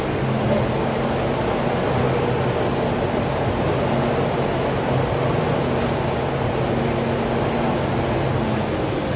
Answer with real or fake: real